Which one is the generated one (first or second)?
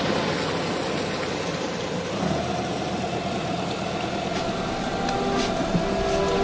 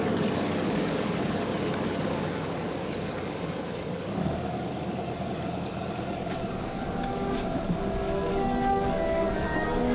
second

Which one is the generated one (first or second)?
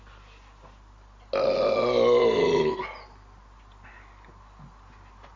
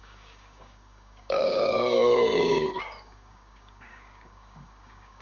second